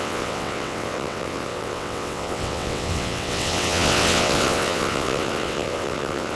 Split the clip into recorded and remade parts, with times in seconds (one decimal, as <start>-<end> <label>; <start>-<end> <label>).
0.0-6.4 remade